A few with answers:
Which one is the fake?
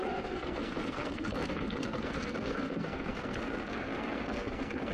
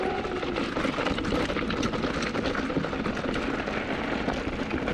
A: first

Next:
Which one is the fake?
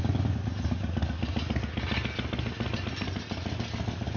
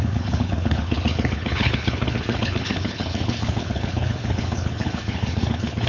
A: second